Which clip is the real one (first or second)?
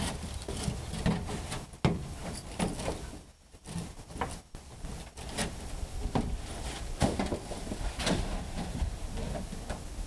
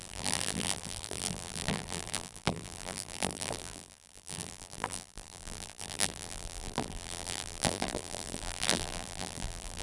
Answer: first